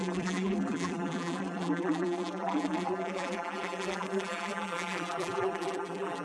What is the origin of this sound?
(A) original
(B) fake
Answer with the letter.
B